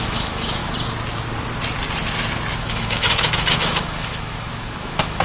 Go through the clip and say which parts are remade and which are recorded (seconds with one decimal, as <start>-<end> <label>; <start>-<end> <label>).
0.0-0.6 remade; 0.6-2.7 recorded; 2.7-5.2 remade

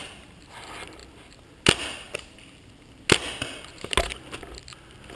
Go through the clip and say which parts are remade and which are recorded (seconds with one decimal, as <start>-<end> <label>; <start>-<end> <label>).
0.0-5.2 recorded

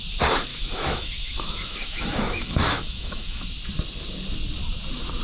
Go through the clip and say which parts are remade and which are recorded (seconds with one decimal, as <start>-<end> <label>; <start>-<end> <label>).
0.0-0.5 recorded; 0.5-3.5 remade; 3.5-5.2 recorded